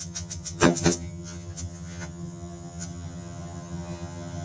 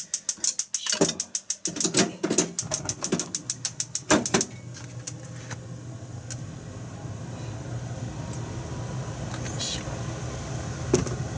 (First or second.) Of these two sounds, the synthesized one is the first